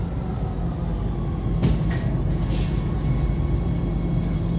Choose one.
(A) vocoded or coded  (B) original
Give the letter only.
B